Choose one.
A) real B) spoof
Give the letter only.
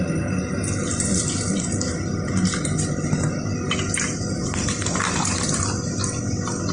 A